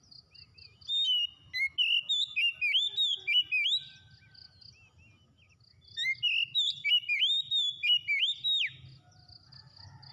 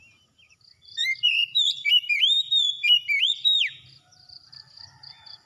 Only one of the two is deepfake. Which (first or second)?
second